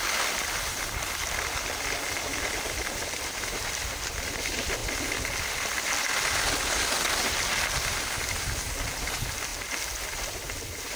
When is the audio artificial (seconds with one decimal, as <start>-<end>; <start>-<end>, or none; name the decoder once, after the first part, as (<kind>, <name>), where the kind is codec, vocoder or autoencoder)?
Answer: none